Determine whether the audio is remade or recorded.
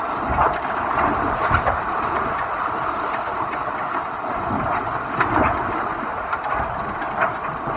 recorded